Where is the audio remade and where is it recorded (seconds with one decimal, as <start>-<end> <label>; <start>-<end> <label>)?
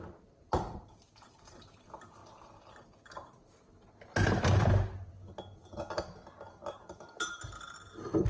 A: 0.0-2.2 remade; 2.2-7.2 recorded; 7.2-8.3 remade